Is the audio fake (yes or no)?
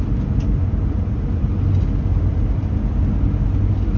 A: no